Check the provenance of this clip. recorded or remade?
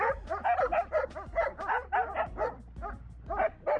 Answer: recorded